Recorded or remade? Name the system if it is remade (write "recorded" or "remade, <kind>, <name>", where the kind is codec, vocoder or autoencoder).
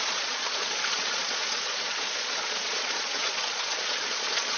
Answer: remade, vocoder, Vocos